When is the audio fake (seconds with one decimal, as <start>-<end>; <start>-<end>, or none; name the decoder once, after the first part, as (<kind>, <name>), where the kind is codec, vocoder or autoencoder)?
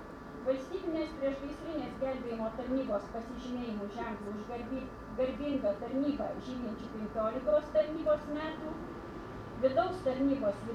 5.1-6.4 (vocoder, BigVGAN v2); 7.5-8.0